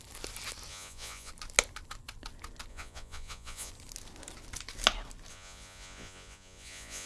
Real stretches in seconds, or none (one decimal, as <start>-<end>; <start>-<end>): 0.0-0.7; 1.3-2.7; 3.7-5.3